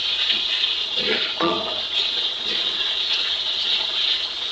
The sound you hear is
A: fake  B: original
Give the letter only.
A